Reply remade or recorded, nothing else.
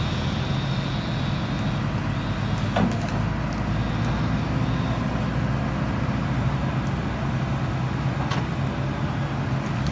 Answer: recorded